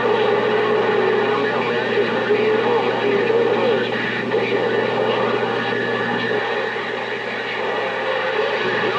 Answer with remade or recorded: recorded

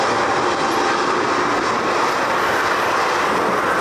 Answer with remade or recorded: recorded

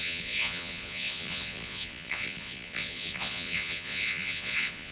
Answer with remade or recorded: remade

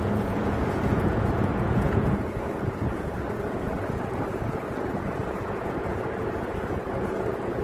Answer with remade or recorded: remade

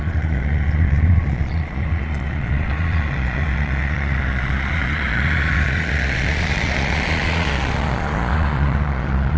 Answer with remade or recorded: remade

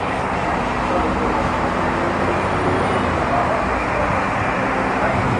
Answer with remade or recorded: recorded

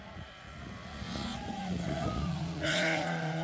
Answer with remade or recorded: remade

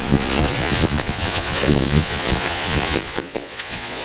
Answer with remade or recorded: remade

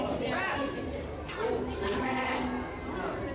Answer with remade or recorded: recorded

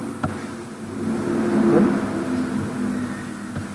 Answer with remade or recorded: recorded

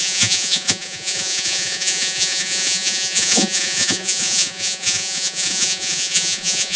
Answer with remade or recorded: remade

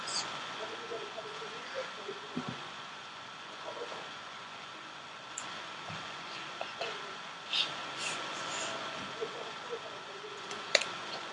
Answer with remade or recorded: remade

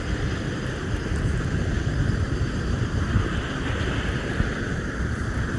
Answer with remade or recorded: recorded